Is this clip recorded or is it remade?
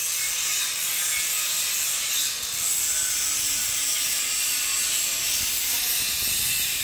recorded